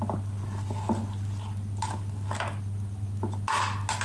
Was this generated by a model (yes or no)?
no